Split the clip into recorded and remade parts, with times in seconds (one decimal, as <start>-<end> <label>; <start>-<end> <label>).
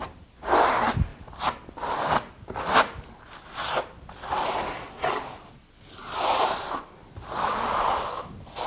0.0-8.7 recorded